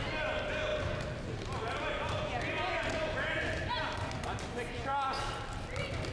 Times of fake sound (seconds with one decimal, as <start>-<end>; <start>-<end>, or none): none